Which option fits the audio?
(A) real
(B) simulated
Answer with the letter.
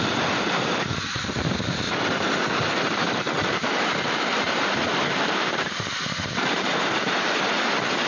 B